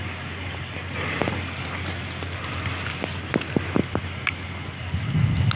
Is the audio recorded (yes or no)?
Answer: yes